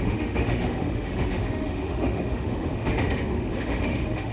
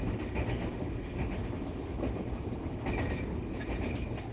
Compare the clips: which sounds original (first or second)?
second